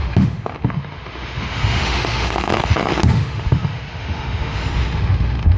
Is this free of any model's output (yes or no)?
no